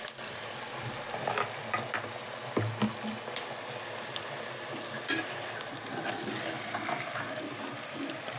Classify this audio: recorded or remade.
recorded